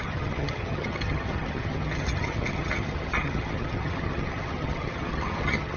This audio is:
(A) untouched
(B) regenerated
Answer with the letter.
B